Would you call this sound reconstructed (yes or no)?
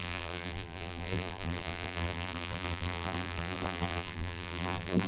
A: yes